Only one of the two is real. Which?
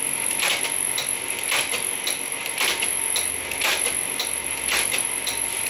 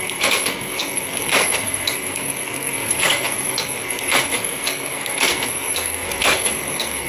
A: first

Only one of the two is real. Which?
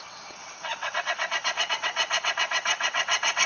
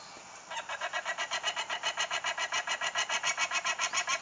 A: second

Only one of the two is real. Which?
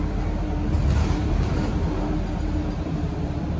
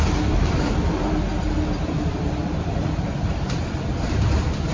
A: first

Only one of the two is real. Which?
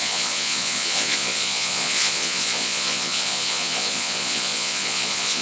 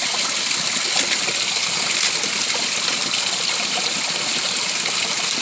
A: second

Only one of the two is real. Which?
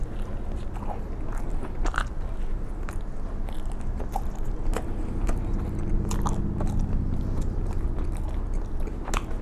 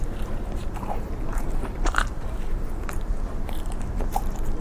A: first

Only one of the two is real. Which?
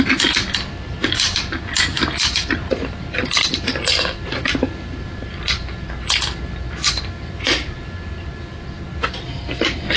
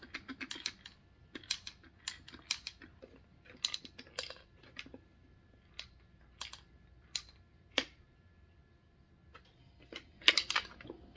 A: second